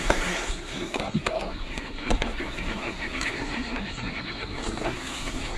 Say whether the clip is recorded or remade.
remade